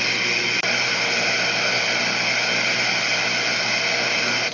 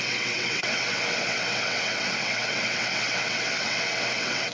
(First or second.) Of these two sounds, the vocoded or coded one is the second